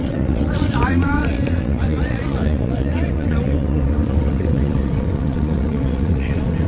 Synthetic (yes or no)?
yes